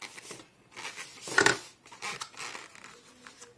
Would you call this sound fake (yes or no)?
no